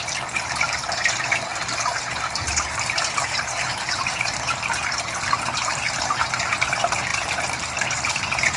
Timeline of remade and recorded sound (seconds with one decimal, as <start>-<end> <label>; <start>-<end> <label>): 0.0-8.6 remade